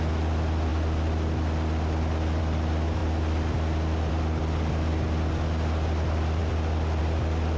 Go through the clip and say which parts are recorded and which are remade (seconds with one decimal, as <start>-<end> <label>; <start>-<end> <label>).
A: 0.0-7.6 recorded